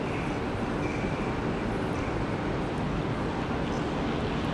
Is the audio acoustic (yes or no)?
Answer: yes